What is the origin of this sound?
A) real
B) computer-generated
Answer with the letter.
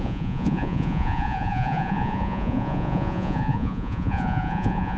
B